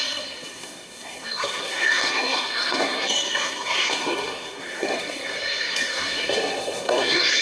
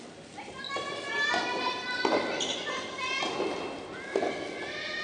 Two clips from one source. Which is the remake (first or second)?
first